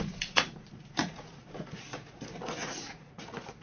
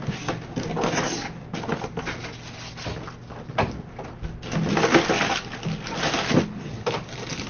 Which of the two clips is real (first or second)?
second